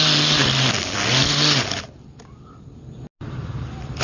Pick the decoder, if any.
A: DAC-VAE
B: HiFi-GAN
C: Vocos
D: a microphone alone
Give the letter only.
D